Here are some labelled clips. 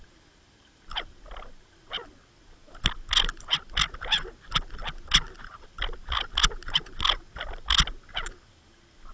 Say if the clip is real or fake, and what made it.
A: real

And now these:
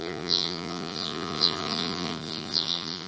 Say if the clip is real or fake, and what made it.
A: fake, vocoder, Vocos